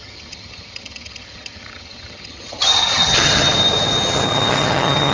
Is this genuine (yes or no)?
no